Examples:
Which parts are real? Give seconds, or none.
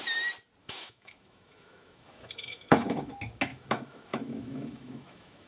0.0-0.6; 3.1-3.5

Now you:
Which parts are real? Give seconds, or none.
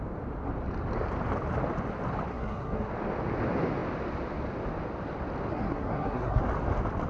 0.0-2.3; 2.9-5.5; 6.4-7.1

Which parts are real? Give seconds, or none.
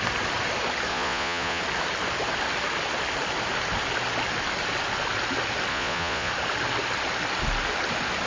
0.0-0.9; 1.6-5.7; 6.3-8.3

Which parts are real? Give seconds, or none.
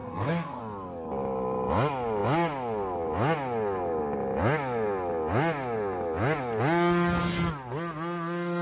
0.6-8.6